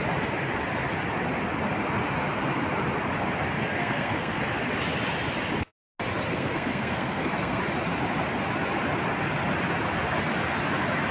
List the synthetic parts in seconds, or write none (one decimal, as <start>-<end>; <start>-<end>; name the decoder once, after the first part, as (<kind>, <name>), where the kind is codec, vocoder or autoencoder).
3.8-4.4 (codec, SNAC); 6.3-7.6